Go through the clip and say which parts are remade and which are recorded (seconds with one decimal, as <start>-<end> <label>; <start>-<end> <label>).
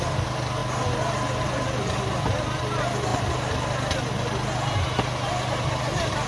0.0-6.3 recorded